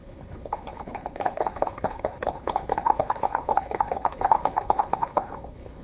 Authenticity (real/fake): fake